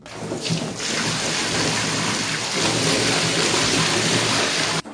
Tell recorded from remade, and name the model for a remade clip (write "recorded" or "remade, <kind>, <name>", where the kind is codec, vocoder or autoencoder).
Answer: recorded